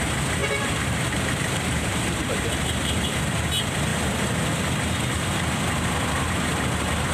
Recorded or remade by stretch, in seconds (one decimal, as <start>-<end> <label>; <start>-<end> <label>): 0.0-0.4 recorded; 0.4-3.2 remade; 3.2-7.1 recorded